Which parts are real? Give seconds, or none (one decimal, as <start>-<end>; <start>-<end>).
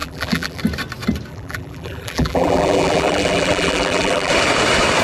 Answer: 0.6-1.3; 4.3-5.0